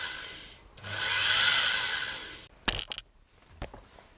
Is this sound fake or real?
real